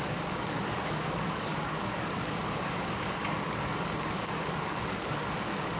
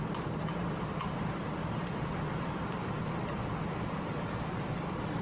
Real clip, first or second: second